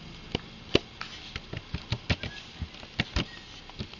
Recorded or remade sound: recorded